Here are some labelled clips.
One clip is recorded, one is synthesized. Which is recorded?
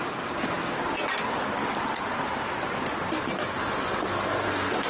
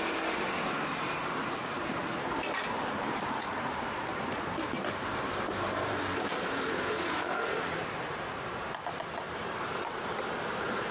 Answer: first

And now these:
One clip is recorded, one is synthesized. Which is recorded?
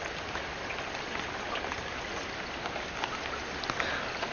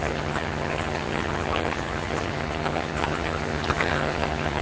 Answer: first